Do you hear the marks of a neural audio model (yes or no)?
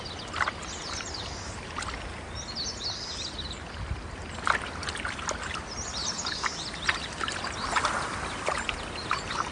no